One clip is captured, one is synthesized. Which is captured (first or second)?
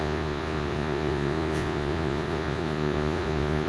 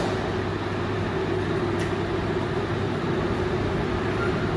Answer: second